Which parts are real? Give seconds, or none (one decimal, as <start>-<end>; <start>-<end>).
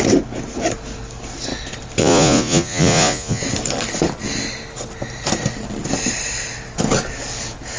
0.0-2.0; 3.4-7.8